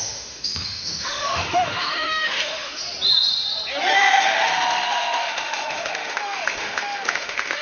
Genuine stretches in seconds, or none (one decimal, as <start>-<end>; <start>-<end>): 2.8-3.8